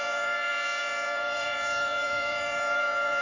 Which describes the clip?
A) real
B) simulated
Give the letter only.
B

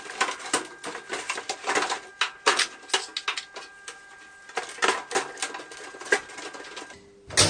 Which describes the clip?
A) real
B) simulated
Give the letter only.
A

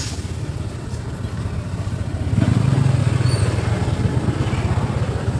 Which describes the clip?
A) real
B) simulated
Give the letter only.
A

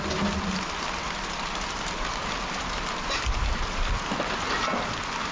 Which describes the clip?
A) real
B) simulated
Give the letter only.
A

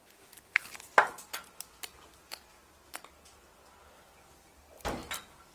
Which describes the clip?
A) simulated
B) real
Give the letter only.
B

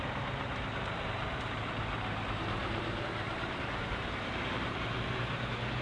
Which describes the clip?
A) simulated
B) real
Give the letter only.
A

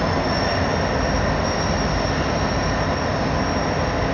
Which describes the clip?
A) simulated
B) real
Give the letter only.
B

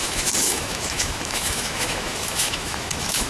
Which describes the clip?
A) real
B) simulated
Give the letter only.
B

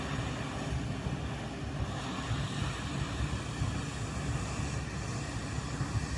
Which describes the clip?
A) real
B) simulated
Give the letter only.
A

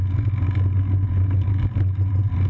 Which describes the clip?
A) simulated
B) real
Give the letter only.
B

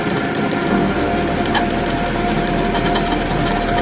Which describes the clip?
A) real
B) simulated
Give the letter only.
A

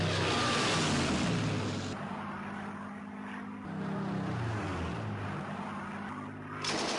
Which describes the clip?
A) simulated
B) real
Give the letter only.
B